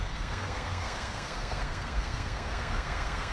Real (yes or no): no